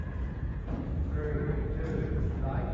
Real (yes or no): no